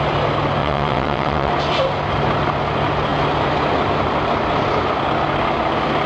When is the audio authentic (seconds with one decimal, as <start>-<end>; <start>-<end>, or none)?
0.0-0.6; 1.5-6.1